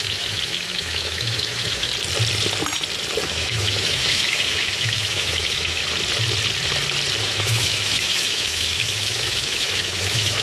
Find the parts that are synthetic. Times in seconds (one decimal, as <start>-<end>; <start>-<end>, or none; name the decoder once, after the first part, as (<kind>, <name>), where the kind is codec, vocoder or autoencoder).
0.0-1.9 (autoencoder, DAC-VAE); 3.3-5.8; 7.2-10.4